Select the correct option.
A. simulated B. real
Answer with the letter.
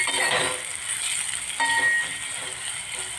B